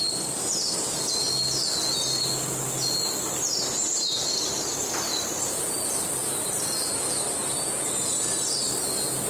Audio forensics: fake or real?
real